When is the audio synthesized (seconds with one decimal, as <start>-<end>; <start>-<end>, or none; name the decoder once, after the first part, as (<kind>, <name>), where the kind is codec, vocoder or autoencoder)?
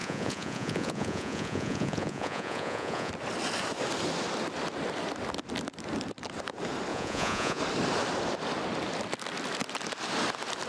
0.0-3.1 (vocoder, Vocos); 6.9-7.6